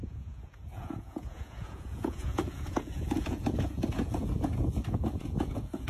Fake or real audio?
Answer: fake